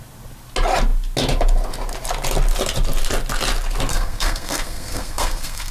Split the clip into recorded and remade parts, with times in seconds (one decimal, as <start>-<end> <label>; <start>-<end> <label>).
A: 0.0-3.9 recorded; 3.9-5.7 remade